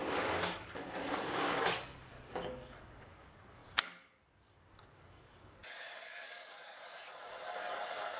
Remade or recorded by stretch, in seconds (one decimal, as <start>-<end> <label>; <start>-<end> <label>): 0.0-8.2 remade